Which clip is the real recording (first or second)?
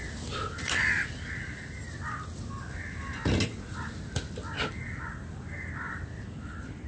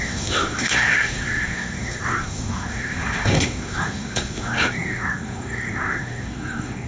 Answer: first